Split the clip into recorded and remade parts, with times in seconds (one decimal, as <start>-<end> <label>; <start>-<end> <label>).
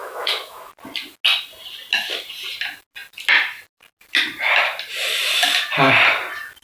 0.0-0.7 remade; 0.7-6.6 recorded